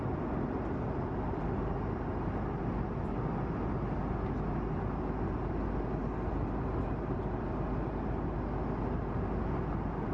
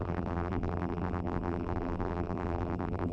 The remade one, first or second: second